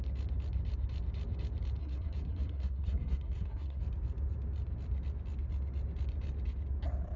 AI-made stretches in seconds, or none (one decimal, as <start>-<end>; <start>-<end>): 1.8-3.8